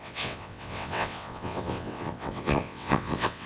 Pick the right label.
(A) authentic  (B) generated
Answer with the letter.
B